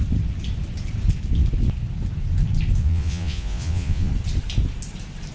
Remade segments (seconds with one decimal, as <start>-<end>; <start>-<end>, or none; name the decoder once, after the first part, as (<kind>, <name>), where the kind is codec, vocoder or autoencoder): 2.8-4.1 (vocoder, Vocos)